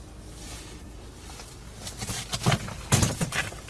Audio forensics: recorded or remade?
recorded